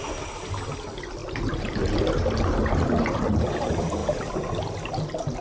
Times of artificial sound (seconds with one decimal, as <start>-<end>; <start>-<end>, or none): 1.2-1.9; 4.0-4.6